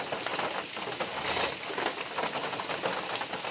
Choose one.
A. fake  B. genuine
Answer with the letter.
B